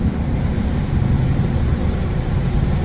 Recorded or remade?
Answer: remade